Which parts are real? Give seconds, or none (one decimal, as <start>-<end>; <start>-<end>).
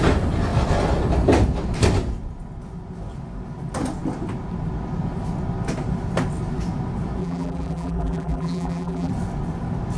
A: 0.0-7.2; 9.1-10.0